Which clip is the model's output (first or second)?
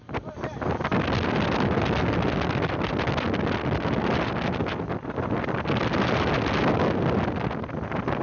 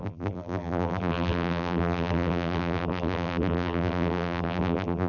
second